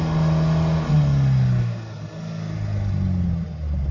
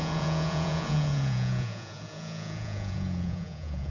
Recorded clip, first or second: first